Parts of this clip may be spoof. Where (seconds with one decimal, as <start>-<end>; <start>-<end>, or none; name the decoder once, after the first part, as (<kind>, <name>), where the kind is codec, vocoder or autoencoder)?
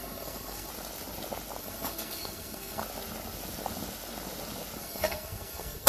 0.0-0.7 (codec, SNAC); 1.6-2.8; 4.8-5.9